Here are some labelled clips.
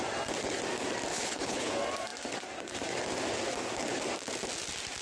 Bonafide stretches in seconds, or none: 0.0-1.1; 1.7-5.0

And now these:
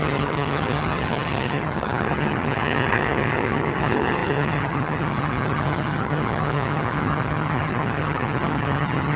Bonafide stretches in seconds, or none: none

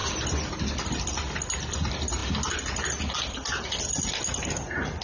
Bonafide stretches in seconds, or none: 0.0-5.0

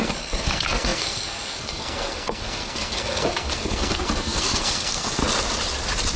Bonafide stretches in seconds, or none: 5.2-6.2

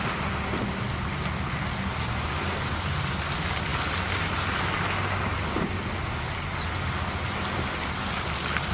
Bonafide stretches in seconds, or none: 0.0-8.7